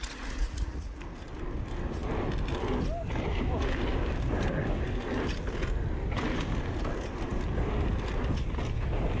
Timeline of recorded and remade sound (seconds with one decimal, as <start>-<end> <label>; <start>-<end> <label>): 0.0-1.0 remade; 1.0-9.2 recorded